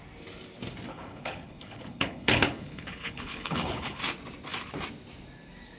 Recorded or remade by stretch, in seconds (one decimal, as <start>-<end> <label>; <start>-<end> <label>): 0.0-0.9 recorded; 0.9-4.0 remade; 4.0-5.8 recorded